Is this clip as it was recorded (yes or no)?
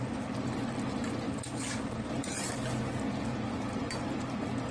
yes